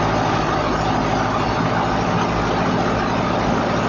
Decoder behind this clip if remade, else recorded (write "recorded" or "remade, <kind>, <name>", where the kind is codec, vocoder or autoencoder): recorded